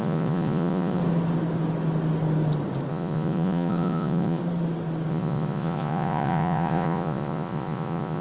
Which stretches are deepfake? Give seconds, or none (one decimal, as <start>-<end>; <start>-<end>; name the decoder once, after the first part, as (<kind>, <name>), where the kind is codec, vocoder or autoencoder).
0.0-1.0 (vocoder, Vocos); 2.9-4.4; 5.1-8.2